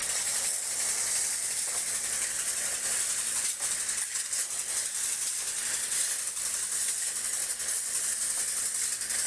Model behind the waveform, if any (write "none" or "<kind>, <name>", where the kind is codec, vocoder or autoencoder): none